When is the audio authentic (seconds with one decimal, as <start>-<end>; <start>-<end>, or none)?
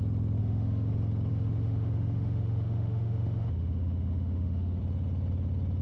0.0-0.4; 0.9-1.3; 4.8-5.8